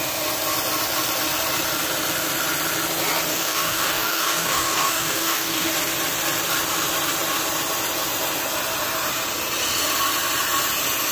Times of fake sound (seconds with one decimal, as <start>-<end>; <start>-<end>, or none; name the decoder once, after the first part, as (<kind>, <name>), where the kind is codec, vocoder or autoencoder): 3.3-5.7 (codec, DAC)